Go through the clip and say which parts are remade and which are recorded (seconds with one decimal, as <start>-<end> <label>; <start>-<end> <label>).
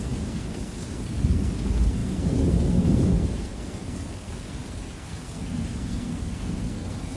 0.0-7.2 remade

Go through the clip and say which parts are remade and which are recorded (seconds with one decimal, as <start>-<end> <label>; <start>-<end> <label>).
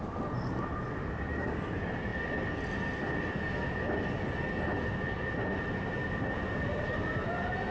0.0-2.1 remade; 2.1-5.4 recorded; 5.4-7.7 remade